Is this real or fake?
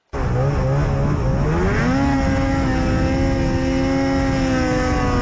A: real